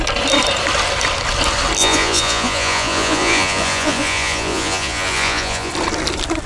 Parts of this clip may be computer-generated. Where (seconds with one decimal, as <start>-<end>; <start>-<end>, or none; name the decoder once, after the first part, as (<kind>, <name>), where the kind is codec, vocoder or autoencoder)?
1.8-5.7 (vocoder, Vocos)